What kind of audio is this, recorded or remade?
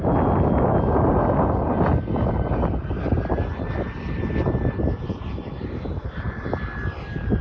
recorded